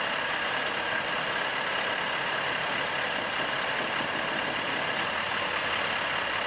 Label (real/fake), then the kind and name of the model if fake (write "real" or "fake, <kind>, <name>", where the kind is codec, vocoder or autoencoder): real